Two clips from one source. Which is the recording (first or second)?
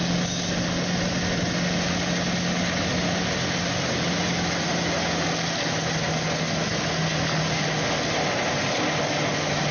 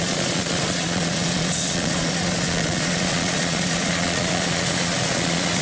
first